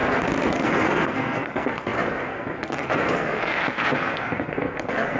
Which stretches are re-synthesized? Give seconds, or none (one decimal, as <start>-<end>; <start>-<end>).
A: 0.5-5.2